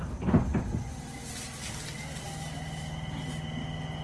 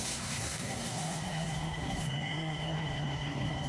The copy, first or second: second